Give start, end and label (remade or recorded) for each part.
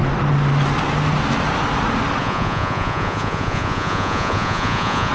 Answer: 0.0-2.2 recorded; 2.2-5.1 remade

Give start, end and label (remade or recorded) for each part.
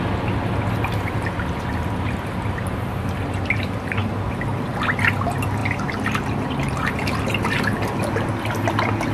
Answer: 0.0-9.1 recorded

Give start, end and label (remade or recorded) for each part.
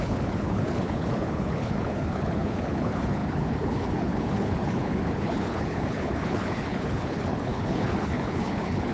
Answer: 0.0-8.9 remade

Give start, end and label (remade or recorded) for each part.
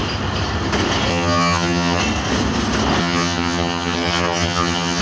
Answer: 0.0-1.1 recorded; 1.1-2.0 remade; 2.0-3.0 recorded; 3.0-5.0 remade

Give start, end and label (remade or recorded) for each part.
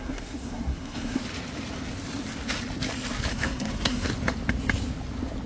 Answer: 0.0-1.2 remade; 1.2-3.3 recorded; 3.3-4.1 remade; 4.1-5.5 recorded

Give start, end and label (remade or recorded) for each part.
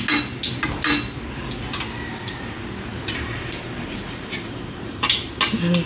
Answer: 0.0-2.9 recorded; 2.9-5.3 remade; 5.3-5.9 recorded